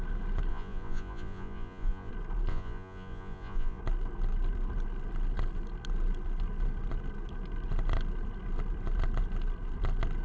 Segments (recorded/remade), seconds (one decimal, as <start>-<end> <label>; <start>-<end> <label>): 0.0-0.5 recorded; 0.5-2.1 remade; 2.1-2.5 recorded; 2.5-3.8 remade; 3.8-10.2 recorded